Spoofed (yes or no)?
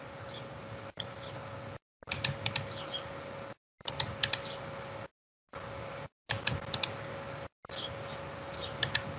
no